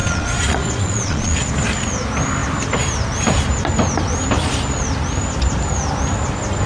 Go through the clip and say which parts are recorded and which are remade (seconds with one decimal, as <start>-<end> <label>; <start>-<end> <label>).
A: 0.0-1.5 remade; 1.5-6.7 recorded